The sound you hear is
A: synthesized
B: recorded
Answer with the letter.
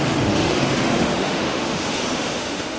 A